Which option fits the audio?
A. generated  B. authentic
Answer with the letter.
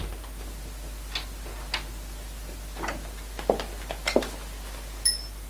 B